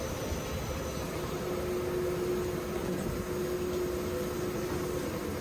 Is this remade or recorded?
recorded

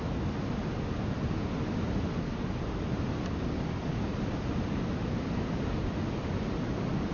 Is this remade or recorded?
recorded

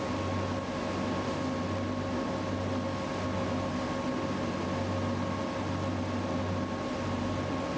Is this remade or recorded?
recorded